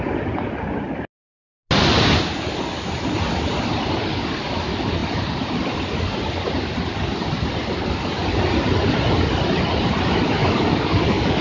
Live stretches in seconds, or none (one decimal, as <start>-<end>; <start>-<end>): 0.0-10.4